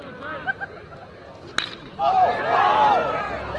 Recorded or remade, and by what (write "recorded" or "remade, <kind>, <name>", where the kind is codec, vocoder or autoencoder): recorded